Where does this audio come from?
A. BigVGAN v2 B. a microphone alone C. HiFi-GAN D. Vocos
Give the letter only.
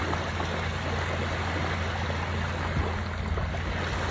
B